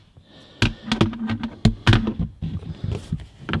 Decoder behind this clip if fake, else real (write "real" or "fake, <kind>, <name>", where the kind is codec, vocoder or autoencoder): real